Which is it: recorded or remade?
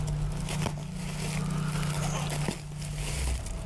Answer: recorded